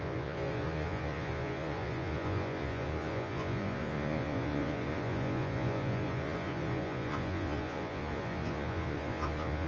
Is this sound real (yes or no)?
no